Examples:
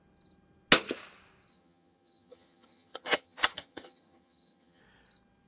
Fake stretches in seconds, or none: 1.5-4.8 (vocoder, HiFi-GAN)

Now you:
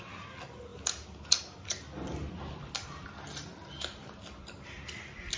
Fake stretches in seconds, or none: none

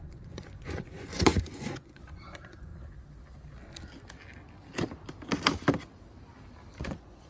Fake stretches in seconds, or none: 0.0-2.7 (vocoder, Vocos); 6.8-7.3